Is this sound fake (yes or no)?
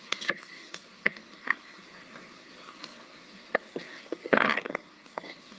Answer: yes